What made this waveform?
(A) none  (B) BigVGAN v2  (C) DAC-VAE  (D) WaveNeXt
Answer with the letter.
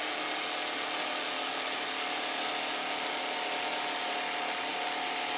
A